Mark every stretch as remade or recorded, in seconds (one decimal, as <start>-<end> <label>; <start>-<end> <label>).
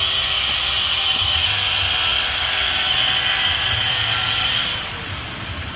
0.0-2.1 recorded; 2.1-5.8 remade